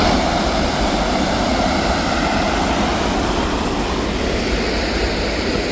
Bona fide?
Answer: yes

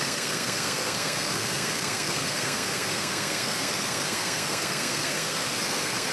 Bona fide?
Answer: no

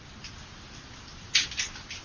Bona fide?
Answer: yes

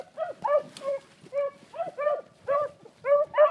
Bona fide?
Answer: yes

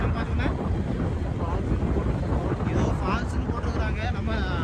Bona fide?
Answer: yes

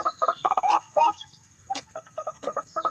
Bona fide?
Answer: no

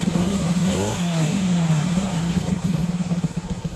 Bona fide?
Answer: no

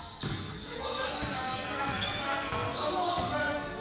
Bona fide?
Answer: no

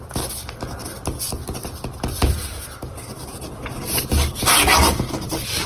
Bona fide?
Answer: yes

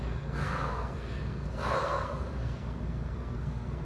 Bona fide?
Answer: no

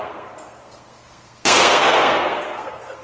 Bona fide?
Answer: no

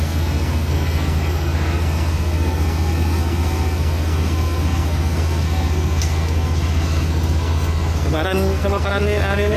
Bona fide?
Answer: no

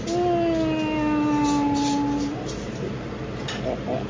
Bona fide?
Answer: yes